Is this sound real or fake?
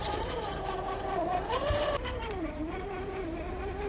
fake